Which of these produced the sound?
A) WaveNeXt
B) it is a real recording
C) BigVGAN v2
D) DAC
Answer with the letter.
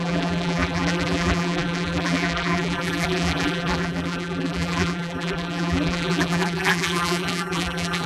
C